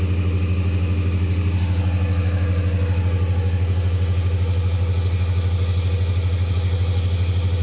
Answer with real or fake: real